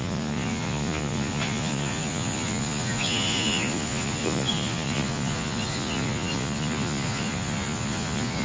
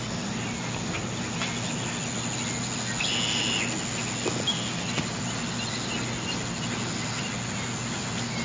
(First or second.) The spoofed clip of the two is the first